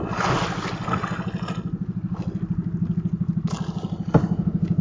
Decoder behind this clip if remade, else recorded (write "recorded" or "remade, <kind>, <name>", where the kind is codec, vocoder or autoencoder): recorded